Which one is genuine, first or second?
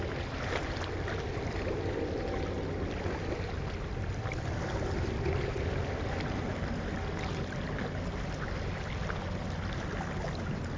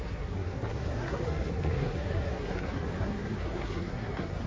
first